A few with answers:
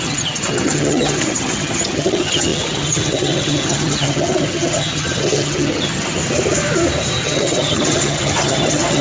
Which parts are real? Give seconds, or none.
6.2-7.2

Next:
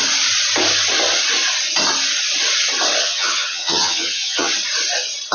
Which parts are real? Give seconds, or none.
0.0-3.0; 4.5-5.3

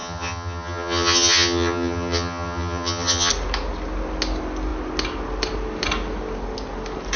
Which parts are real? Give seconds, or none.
3.3-7.2

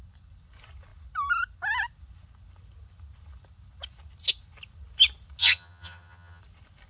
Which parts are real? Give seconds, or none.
0.0-5.4; 6.4-6.9

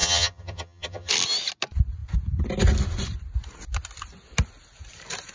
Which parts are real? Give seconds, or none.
1.1-5.3